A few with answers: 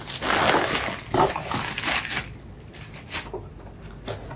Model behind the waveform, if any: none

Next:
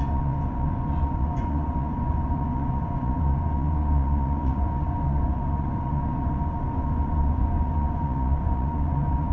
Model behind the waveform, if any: vocoder, Vocos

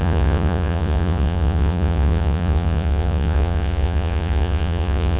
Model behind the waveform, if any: vocoder, Vocos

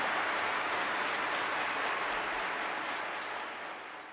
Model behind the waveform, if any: none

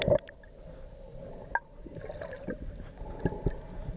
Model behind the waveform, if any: none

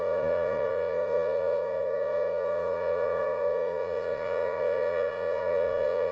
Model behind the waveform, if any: vocoder, Vocos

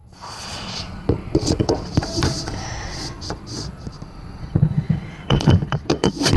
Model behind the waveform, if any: vocoder, Vocos